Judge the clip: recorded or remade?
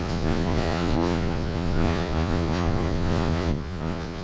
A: remade